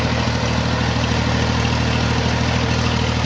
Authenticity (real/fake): real